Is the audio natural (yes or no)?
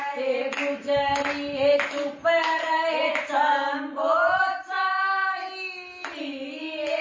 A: yes